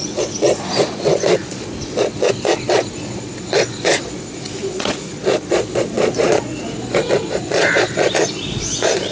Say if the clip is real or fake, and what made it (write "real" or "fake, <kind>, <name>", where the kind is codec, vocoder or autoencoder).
fake, vocoder, Vocos